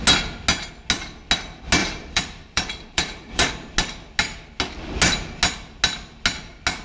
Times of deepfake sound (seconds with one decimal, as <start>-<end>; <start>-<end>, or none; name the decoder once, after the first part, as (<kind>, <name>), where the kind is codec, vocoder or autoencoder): 1.8-3.5 (vocoder, BigVGAN v2)

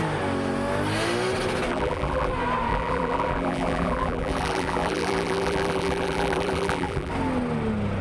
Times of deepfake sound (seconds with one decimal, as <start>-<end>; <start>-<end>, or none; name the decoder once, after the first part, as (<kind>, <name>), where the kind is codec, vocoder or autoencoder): 1.7-2.3 (vocoder, BigVGAN v2); 2.7-7.1

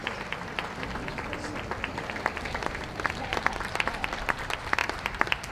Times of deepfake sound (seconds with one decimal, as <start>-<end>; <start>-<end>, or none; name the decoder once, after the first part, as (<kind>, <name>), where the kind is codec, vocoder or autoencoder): 2.6-5.5 (vocoder, BigVGAN v2)

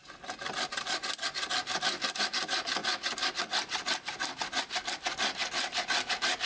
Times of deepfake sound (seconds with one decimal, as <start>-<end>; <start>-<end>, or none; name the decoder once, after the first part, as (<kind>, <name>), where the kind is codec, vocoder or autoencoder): 0.0-0.8 (vocoder, BigVGAN v2); 5.4-6.1